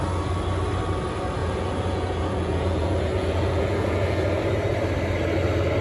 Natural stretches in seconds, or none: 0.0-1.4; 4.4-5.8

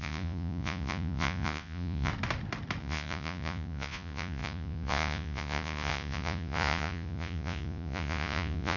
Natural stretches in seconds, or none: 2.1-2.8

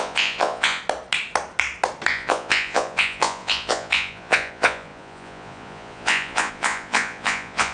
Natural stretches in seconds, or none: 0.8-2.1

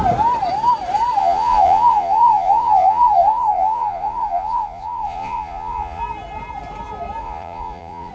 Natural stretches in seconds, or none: 0.0-1.2; 6.0-7.2